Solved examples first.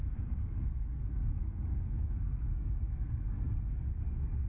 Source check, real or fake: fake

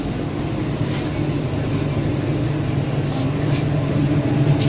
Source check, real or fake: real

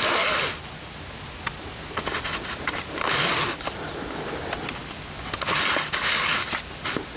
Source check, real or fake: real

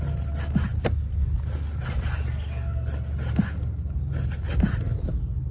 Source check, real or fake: real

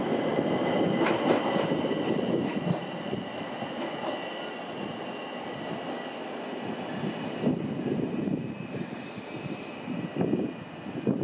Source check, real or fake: real